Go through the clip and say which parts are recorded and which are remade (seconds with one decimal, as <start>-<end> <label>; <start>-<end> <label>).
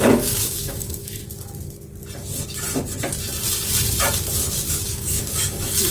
0.0-1.2 remade; 1.2-4.7 recorded; 4.7-5.9 remade